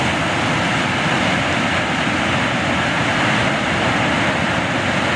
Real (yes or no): yes